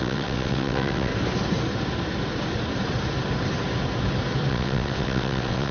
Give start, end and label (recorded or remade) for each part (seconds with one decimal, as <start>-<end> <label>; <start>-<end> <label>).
0.0-1.1 remade; 1.1-4.5 recorded; 4.5-5.7 remade